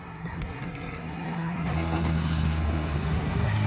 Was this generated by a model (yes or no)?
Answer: yes